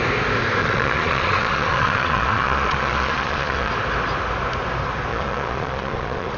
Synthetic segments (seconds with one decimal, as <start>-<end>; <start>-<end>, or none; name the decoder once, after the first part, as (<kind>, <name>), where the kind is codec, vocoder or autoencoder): 0.6-3.7 (vocoder, Vocos); 5.1-6.4